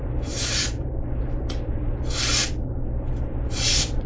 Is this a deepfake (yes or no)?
yes